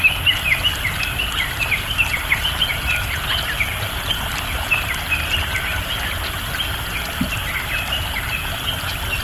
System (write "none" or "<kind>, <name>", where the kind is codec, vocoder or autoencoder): none